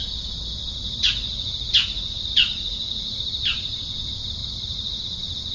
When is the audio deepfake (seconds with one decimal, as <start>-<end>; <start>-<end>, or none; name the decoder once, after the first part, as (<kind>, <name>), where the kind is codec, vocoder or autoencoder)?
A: 0.8-3.2 (vocoder, Vocos); 4.4-5.0